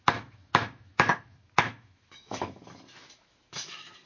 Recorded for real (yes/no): no